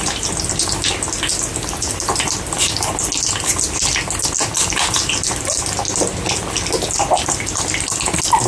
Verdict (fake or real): real